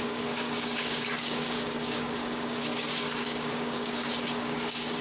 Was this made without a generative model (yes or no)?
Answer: no